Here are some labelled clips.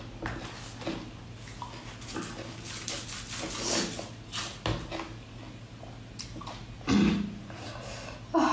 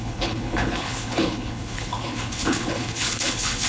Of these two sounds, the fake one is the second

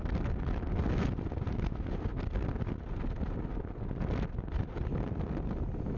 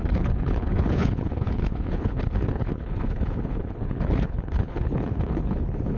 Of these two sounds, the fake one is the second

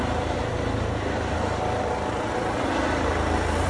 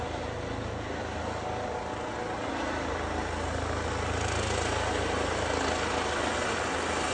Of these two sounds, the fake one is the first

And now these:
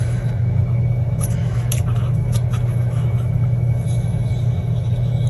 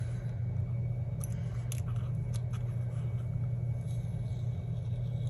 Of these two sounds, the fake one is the first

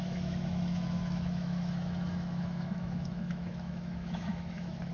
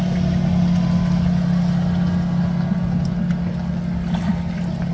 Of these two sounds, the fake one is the first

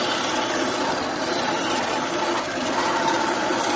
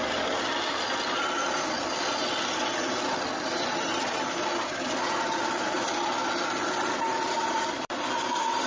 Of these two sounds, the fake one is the first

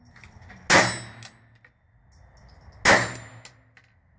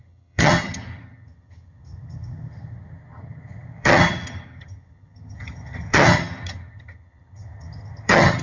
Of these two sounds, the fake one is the second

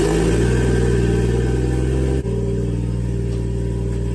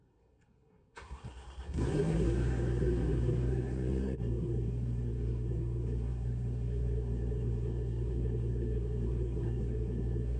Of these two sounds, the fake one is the second